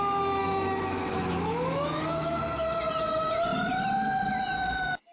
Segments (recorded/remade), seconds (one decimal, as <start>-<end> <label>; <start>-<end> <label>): 0.0-0.4 recorded; 0.4-2.4 remade; 2.4-5.1 recorded